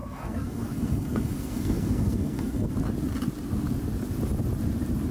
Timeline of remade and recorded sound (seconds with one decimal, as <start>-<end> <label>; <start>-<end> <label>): 0.0-2.7 remade; 2.7-5.1 recorded